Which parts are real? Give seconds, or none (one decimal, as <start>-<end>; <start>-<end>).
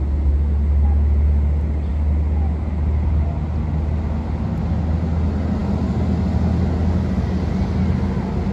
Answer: 0.0-8.5